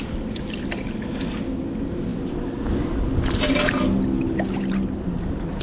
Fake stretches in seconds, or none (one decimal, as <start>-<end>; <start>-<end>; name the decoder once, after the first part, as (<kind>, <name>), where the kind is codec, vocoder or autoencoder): none